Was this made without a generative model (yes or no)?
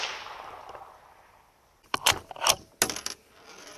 yes